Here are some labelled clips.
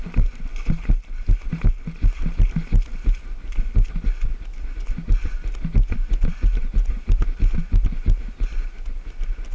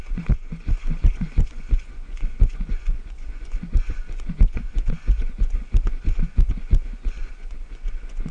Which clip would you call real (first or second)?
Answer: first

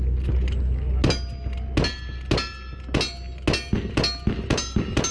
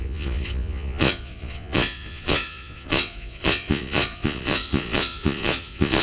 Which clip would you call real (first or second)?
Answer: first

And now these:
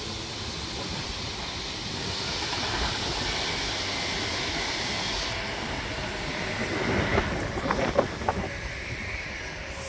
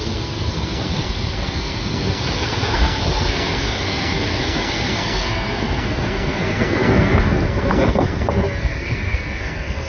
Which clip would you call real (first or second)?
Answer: first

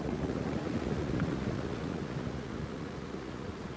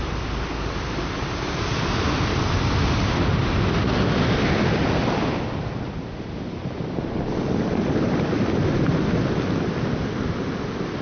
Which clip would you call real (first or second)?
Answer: second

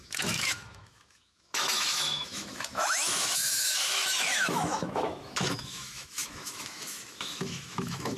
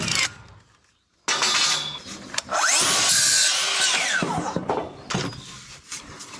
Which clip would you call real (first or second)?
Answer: second